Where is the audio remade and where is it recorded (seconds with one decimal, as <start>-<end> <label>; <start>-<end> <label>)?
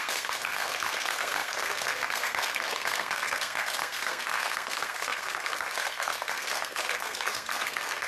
0.0-8.1 remade